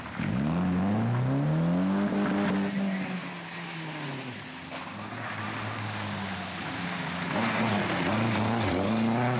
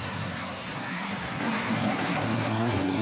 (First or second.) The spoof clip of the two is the second